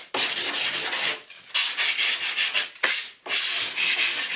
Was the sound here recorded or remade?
recorded